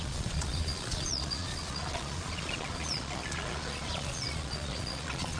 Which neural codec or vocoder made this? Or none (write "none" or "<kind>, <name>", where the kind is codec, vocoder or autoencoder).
vocoder, Vocos